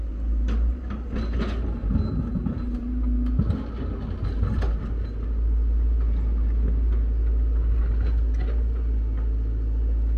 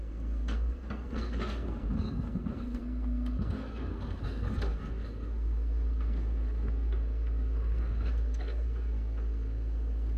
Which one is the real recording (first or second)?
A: first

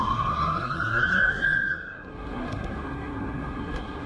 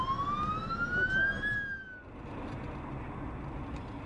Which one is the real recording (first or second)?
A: second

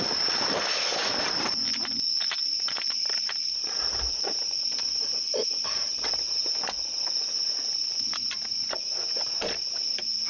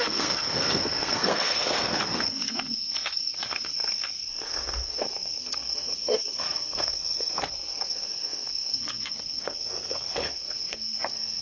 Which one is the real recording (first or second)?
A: first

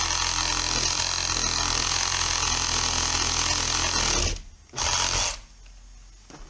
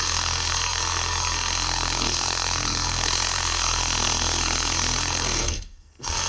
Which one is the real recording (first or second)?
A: first